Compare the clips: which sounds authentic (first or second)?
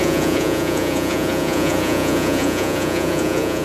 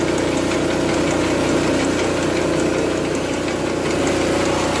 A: second